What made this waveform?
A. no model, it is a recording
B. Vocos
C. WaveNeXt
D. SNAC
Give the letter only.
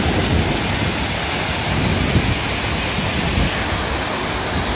A